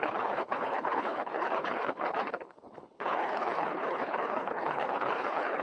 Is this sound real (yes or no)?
no